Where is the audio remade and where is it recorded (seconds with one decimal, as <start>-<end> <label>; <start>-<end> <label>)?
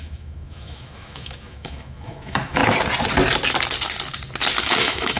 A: 0.0-2.6 remade; 2.6-4.6 recorded; 4.6-5.2 remade